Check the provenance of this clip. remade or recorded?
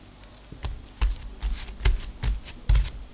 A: recorded